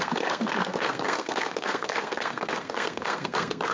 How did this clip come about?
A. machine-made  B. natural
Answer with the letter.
A